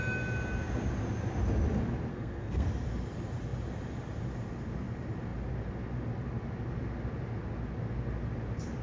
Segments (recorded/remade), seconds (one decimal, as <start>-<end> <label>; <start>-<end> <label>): 0.0-2.1 recorded; 2.1-2.7 remade; 2.7-8.8 recorded